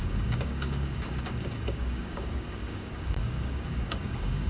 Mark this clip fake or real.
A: fake